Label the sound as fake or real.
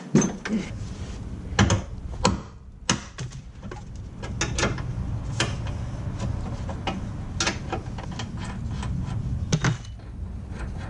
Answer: real